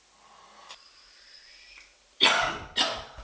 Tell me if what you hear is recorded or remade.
recorded